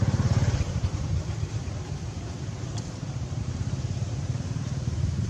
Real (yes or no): no